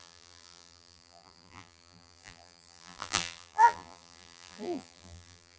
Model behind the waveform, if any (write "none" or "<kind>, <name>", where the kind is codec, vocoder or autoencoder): vocoder, BigVGAN v2